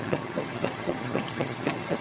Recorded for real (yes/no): no